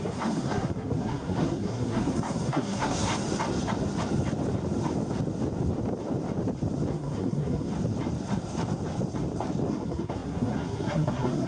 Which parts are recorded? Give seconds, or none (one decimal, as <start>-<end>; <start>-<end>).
3.1-6.9; 7.7-9.7